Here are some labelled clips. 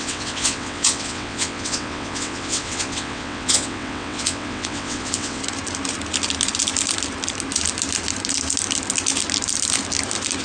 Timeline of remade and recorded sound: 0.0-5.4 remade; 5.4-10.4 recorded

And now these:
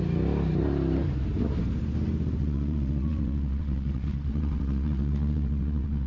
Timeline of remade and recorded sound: 0.0-2.4 recorded; 2.4-6.1 remade

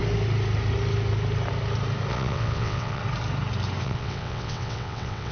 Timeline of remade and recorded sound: 0.0-2.1 recorded; 2.1-3.0 remade; 3.0-3.8 recorded; 3.8-5.3 remade

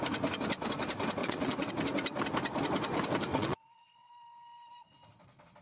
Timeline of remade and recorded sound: 0.0-1.2 recorded; 1.2-1.7 remade; 1.7-3.3 recorded; 3.3-4.1 remade; 4.1-5.6 recorded

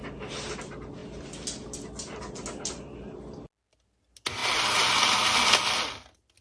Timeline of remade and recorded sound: 0.0-6.4 recorded

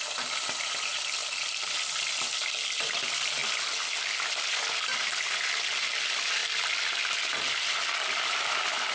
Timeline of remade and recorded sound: 0.0-8.9 recorded

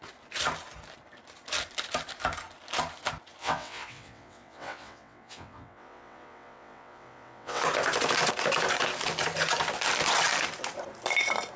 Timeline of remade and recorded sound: 0.0-3.4 recorded; 3.4-7.6 remade; 7.6-11.6 recorded

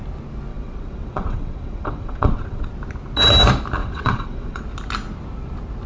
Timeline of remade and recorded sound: 0.0-0.5 recorded; 0.5-2.7 remade; 2.7-3.8 recorded; 3.8-4.6 remade; 4.6-5.9 recorded